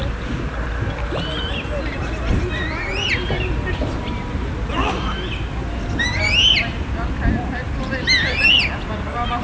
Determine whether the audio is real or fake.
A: real